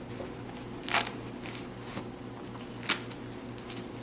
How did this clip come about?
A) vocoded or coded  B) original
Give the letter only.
B